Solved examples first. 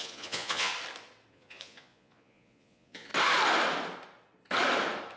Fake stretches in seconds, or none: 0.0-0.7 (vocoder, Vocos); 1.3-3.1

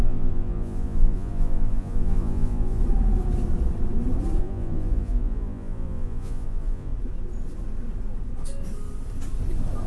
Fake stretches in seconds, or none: 0.0-2.8 (vocoder, Vocos); 4.4-6.9

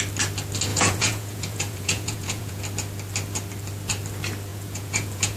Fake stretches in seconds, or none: 0.7-2.6 (vocoder, Vocos); 4.5-5.4

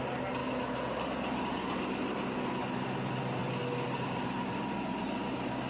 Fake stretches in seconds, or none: none

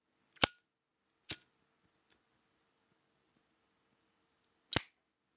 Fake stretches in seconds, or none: none

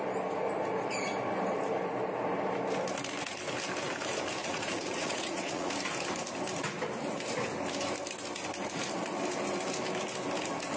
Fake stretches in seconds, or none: 4.4-5.7 (vocoder, Vocos)

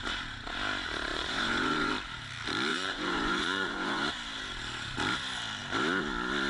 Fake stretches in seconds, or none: 1.1-1.9 (vocoder, Vocos); 2.7-4.1

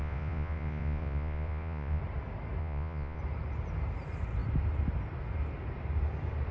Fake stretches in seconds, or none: 0.0-2.0 (vocoder, Vocos); 2.6-3.2